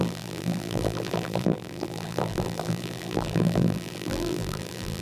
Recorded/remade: remade